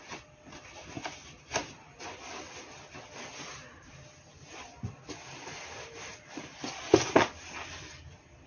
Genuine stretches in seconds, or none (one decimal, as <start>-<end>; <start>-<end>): 0.0-8.5